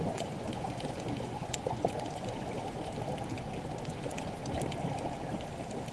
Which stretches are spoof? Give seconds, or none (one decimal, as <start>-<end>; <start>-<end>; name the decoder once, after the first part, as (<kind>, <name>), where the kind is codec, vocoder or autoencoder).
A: 0.0-2.9 (vocoder, Vocos); 3.8-4.4